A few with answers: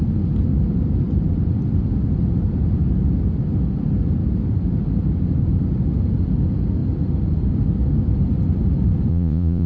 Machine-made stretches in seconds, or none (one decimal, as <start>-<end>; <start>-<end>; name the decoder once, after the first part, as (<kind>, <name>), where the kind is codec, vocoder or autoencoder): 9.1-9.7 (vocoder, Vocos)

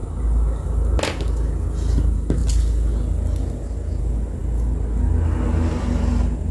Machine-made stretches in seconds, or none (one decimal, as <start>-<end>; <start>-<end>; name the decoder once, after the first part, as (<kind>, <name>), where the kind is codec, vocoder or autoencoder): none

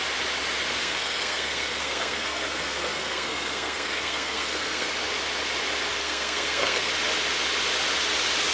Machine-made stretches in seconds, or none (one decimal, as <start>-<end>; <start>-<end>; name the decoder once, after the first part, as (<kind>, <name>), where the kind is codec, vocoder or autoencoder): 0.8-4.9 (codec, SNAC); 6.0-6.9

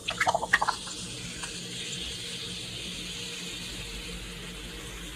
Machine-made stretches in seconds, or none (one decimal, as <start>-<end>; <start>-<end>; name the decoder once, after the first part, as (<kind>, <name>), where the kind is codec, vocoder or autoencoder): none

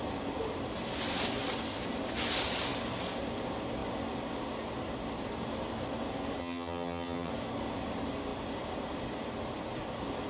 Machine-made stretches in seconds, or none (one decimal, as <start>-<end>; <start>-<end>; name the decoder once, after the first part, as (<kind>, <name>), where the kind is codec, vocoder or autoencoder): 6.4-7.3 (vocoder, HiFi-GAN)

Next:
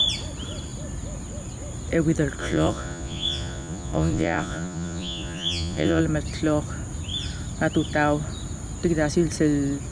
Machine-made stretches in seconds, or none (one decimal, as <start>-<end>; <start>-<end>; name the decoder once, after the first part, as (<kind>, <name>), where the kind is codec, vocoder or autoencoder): 2.4-6.0 (vocoder, Vocos)

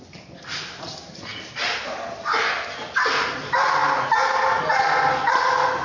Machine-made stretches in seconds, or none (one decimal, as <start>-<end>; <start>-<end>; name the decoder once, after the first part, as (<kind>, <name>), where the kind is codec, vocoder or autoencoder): none